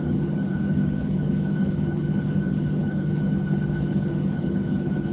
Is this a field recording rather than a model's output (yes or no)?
no